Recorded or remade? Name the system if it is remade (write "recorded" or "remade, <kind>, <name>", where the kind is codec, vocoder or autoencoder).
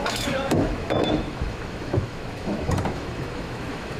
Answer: remade, autoencoder, DAC-VAE